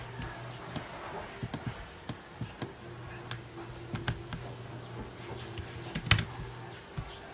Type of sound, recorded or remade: recorded